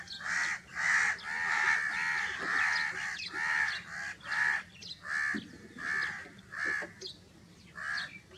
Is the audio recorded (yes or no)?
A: yes